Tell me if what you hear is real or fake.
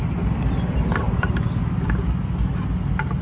real